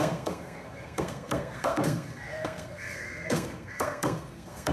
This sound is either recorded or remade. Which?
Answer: remade